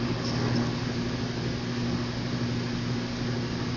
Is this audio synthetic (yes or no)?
no